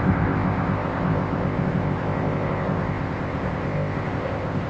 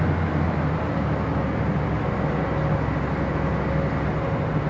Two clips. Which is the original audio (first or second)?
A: second